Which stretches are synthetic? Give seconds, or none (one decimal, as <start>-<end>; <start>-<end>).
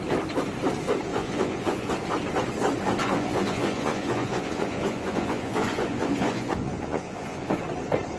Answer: 1.1-1.9; 3.0-7.6